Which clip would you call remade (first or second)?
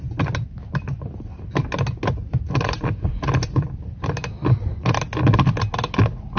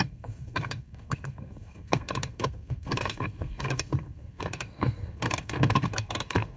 second